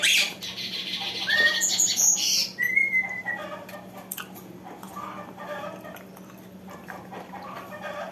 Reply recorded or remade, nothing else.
remade